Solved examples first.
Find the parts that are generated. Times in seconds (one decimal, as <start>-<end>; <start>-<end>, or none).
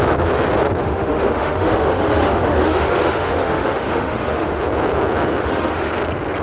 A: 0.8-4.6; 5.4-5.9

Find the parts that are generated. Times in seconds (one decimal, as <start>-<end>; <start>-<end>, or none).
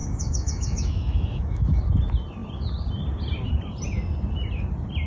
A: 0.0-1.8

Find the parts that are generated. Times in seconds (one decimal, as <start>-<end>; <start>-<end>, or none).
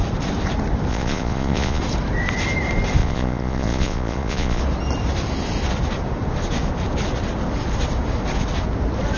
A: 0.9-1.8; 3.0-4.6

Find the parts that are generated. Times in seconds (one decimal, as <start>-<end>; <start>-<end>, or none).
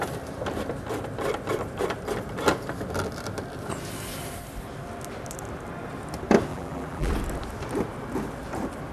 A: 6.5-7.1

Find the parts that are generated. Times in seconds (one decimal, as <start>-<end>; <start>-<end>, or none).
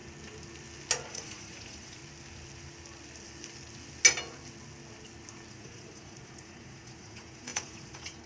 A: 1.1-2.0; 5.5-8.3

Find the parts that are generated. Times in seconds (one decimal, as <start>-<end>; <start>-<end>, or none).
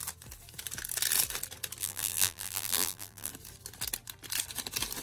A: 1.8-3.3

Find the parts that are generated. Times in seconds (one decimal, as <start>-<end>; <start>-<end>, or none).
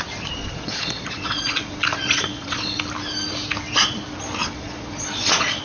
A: 0.4-2.8; 4.4-5.6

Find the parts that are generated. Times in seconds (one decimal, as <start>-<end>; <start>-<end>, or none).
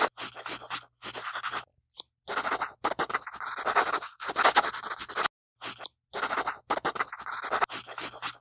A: none